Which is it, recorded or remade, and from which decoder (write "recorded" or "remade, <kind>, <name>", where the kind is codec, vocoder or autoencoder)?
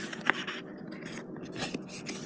recorded